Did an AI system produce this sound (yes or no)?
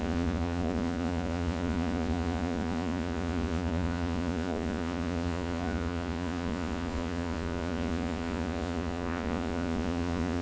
yes